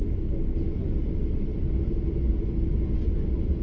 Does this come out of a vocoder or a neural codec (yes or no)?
no